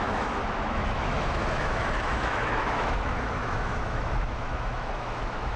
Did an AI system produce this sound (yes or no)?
yes